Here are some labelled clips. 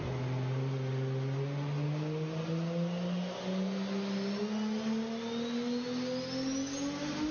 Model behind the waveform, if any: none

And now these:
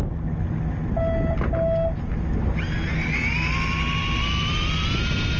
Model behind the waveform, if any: none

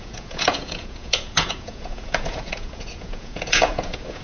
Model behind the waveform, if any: vocoder, Vocos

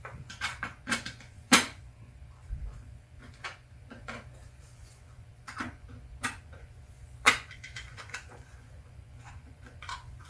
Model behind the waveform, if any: vocoder, Vocos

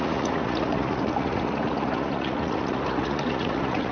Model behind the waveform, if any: vocoder, Vocos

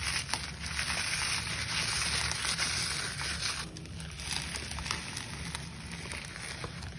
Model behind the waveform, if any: none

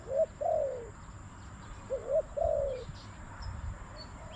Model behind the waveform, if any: vocoder, BigVGAN v2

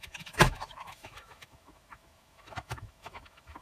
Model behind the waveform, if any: autoencoder, DAC-VAE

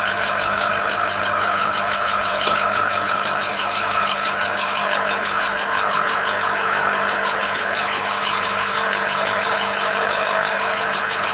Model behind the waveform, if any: codec, HILCodec